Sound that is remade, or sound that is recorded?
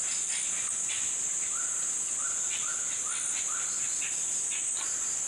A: recorded